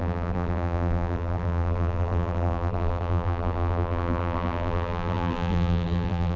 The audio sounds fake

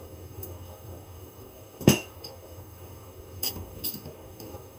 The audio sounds fake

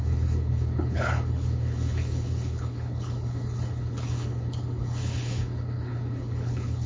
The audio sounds fake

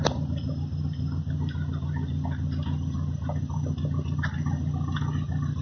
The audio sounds real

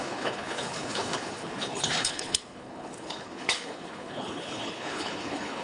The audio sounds fake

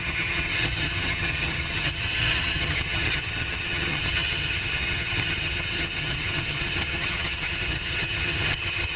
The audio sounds fake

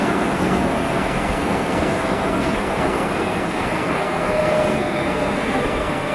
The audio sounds fake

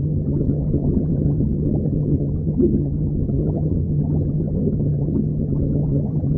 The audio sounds fake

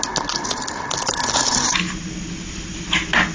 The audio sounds real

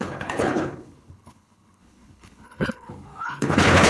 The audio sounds fake